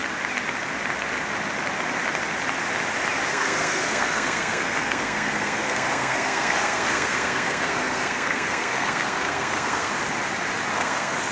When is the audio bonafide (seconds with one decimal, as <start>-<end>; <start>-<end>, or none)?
0.0-3.3; 9.9-10.7